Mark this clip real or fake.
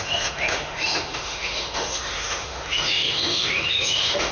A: fake